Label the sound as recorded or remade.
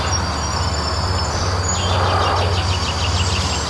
recorded